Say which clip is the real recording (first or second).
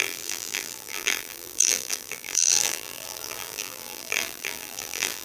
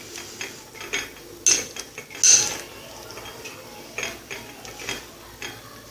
second